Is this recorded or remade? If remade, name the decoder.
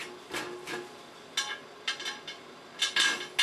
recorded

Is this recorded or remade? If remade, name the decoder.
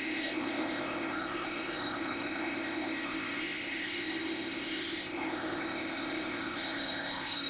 remade, codec, ZipCodec